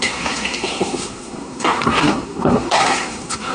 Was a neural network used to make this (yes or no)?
yes